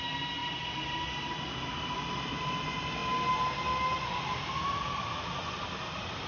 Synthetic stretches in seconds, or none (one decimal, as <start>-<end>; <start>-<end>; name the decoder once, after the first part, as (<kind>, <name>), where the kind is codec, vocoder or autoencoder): 0.4-1.4 (vocoder, BigVGAN v2)